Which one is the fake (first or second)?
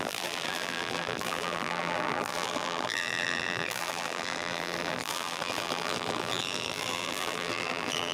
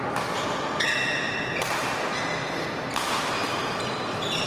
first